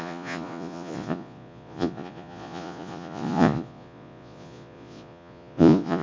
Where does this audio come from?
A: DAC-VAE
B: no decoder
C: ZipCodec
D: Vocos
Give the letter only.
D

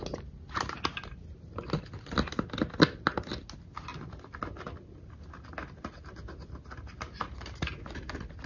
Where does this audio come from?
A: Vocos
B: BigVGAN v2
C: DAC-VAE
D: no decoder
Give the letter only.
D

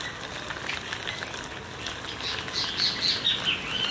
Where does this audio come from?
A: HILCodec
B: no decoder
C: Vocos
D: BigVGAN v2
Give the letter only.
B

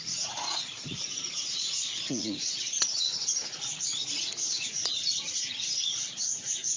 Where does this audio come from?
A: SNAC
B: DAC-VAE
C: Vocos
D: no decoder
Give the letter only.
C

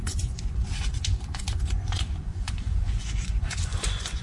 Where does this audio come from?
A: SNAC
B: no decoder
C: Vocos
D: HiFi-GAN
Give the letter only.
C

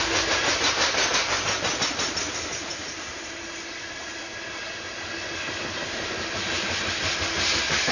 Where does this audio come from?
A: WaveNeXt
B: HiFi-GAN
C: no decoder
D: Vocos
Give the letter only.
C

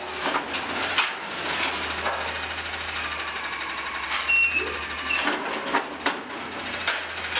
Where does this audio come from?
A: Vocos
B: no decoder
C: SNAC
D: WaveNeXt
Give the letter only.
B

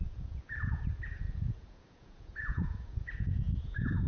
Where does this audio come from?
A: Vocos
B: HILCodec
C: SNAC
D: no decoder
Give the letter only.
A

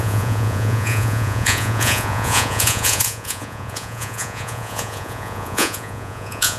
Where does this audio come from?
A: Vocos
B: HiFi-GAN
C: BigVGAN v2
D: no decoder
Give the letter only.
A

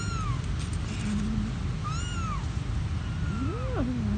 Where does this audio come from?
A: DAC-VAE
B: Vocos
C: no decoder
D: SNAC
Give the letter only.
C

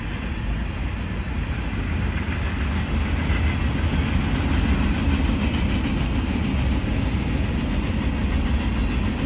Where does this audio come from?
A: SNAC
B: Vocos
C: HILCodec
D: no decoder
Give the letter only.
D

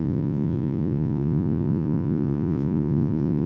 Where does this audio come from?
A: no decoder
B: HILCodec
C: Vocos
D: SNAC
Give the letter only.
C